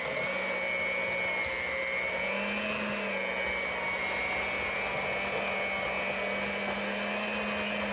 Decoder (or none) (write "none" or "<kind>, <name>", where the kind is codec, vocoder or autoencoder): none